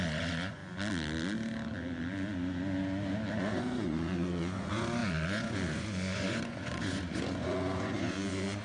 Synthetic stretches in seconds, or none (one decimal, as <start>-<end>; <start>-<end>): 0.0-0.6; 3.3-8.6